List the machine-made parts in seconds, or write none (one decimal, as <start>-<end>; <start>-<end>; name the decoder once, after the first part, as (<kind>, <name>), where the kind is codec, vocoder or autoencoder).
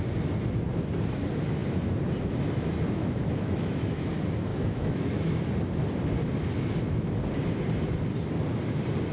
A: 3.0-4.1 (autoencoder, DAC-VAE); 4.5-5.5